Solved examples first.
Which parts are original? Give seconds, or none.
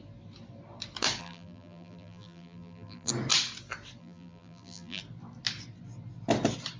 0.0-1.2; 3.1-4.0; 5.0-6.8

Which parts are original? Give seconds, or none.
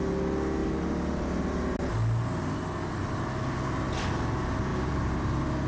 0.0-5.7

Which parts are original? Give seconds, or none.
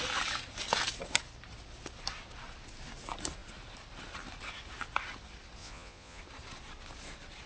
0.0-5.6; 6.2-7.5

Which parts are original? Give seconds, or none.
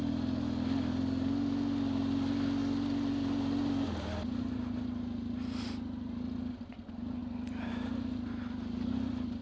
0.0-9.4